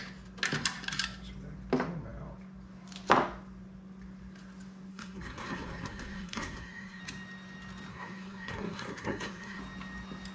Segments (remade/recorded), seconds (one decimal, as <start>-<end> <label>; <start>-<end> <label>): 0.0-4.9 recorded; 4.9-7.0 remade; 7.0-7.9 recorded; 7.9-9.6 remade; 9.6-10.3 recorded

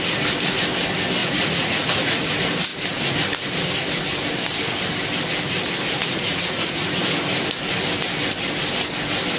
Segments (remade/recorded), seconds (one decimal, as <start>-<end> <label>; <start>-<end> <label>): 0.0-1.2 recorded; 1.2-2.3 remade; 2.3-6.0 recorded; 6.0-6.9 remade; 6.9-9.4 recorded